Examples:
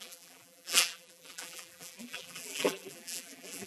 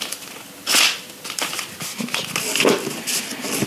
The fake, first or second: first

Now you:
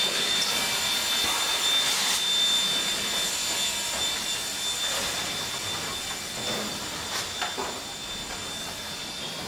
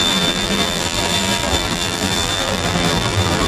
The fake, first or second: second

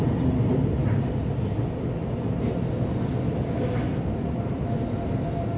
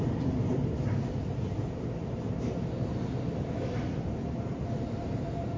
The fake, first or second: second